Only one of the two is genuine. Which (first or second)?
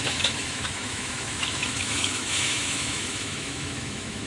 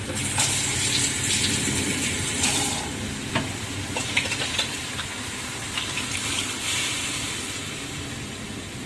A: second